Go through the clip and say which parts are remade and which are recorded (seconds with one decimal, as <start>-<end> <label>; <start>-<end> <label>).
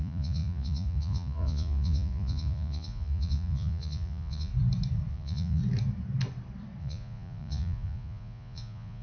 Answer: 0.0-4.5 remade; 4.5-5.1 recorded; 5.1-5.6 remade; 5.6-6.8 recorded; 6.8-9.0 remade